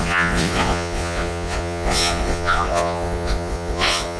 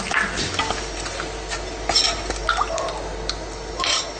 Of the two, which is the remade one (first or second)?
first